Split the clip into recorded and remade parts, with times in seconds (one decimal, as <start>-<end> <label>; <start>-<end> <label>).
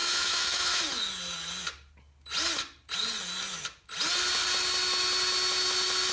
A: 0.0-0.8 remade; 0.8-6.1 recorded